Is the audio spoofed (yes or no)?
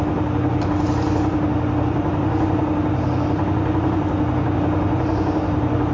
no